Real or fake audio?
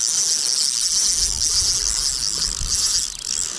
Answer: real